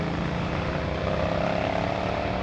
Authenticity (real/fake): real